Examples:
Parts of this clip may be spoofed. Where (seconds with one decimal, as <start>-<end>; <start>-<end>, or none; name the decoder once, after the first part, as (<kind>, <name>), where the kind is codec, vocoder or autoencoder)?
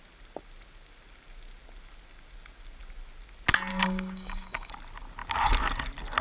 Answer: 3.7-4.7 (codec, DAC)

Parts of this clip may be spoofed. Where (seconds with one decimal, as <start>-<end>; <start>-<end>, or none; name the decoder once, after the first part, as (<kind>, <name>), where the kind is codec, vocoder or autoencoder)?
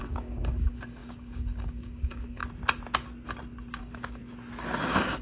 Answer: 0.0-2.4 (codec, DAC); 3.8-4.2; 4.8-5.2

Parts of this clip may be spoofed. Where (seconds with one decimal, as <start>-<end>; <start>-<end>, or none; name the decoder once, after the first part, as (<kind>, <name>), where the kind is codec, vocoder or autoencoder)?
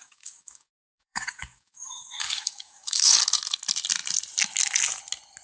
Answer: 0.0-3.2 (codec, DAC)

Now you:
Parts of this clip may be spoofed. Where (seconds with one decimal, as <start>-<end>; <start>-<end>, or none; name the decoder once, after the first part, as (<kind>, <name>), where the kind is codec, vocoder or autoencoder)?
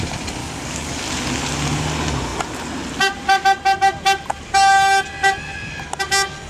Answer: 0.4-1.0 (codec, DAC)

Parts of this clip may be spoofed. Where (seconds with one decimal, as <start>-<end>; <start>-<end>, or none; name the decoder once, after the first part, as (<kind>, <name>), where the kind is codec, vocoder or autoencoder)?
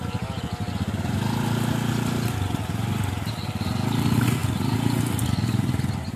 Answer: none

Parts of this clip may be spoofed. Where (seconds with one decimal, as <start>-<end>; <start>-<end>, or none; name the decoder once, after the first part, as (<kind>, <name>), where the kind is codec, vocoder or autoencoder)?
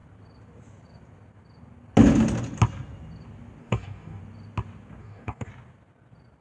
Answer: 3.6-4.2 (codec, DAC); 5.0-5.5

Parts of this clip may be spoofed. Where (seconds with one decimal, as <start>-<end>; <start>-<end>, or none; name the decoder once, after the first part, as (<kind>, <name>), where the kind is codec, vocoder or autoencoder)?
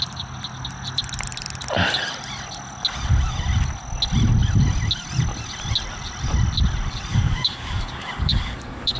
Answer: 7.1-9.0 (codec, DAC)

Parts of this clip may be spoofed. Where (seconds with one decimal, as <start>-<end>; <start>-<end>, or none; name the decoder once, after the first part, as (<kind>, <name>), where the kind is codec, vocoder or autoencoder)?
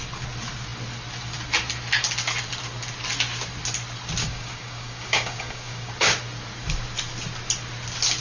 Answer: 4.2-5.9 (codec, DAC)